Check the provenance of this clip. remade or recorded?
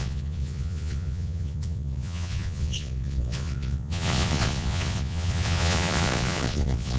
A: remade